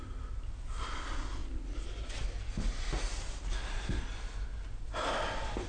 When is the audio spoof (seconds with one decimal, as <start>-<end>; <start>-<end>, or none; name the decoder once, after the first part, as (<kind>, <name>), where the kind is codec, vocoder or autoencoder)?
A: none